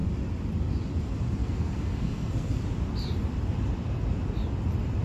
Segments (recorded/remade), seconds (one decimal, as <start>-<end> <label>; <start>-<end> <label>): 0.0-1.4 recorded; 1.4-2.6 remade; 2.6-5.0 recorded